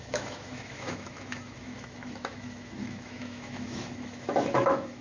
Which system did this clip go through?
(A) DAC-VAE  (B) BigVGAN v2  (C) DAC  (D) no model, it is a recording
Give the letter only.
A